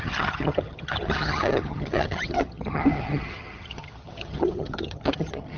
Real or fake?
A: fake